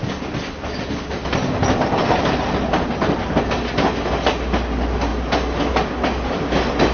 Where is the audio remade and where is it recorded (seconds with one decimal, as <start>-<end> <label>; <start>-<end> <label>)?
0.0-6.9 recorded